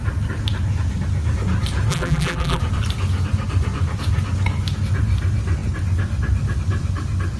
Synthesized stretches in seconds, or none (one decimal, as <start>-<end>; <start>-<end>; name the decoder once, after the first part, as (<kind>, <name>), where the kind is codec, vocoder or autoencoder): 1.9-2.6 (vocoder, BigVGAN v2)